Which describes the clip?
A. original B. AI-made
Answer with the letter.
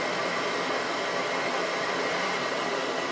B